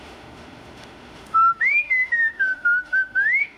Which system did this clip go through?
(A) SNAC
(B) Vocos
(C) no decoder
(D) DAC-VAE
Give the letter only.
D